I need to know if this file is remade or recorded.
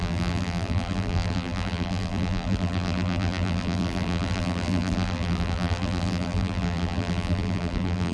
remade